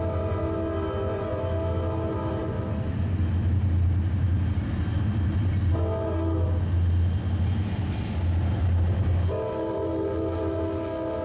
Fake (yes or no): no